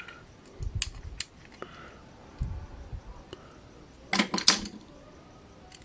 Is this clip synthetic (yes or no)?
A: no